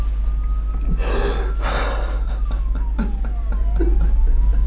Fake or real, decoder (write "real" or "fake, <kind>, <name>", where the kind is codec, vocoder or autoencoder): real